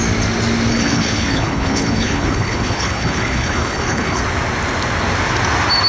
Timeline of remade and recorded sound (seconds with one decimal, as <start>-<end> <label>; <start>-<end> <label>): 0.0-0.7 recorded; 0.7-4.2 remade; 4.2-5.9 recorded

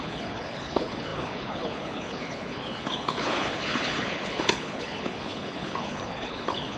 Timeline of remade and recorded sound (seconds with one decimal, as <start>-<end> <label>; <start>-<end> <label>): 0.0-6.8 remade

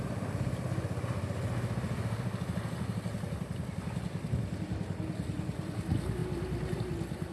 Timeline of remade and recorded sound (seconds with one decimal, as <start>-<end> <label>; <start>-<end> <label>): 0.0-7.3 recorded

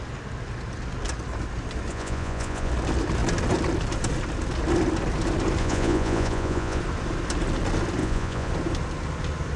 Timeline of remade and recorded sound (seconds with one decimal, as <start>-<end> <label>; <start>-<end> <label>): 0.0-1.9 recorded; 1.9-2.7 remade; 2.7-5.6 recorded; 5.6-6.8 remade; 6.8-8.0 recorded; 8.0-8.5 remade; 8.5-9.6 recorded

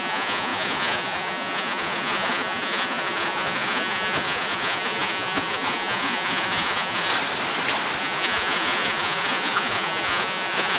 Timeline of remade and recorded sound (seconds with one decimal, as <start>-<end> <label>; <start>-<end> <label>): 0.0-7.1 remade; 7.1-8.0 recorded; 8.0-10.8 remade

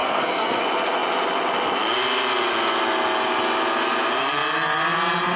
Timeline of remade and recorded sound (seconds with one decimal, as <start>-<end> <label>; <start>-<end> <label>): 0.0-0.6 remade; 0.6-5.4 recorded